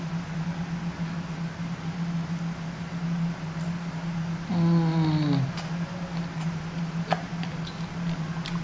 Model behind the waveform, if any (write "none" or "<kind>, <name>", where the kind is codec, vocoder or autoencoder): none